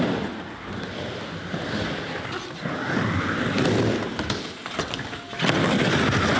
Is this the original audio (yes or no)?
yes